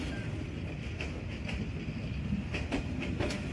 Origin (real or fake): real